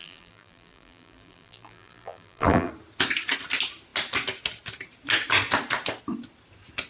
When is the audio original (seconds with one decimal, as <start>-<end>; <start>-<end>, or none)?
2.7-6.9